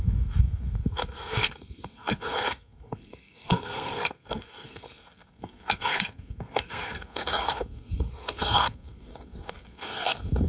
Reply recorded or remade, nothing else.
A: remade